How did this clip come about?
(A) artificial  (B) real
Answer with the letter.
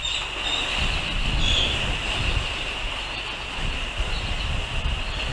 B